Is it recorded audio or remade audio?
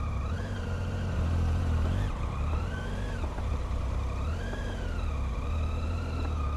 remade